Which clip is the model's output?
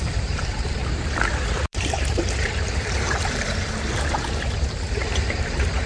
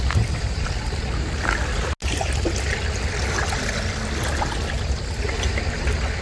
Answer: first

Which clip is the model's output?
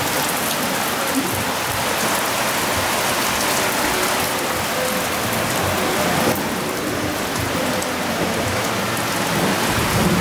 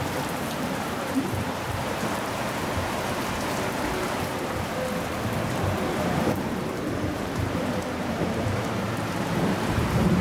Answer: second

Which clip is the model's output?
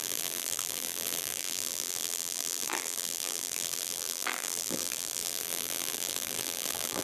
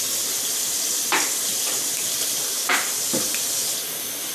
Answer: first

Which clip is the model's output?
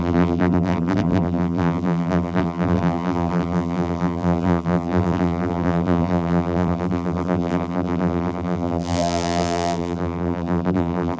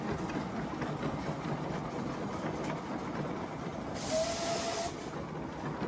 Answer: first